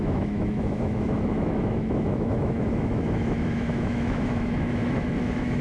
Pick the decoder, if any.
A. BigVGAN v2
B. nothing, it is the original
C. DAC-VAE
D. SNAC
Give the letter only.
C